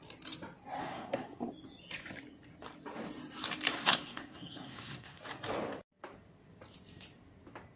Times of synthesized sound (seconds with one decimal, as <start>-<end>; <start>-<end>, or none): 0.8-1.5; 3.7-5.2